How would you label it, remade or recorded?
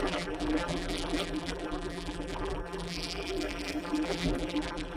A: remade